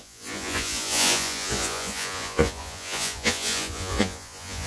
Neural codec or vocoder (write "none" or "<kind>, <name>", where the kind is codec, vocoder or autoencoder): vocoder, Vocos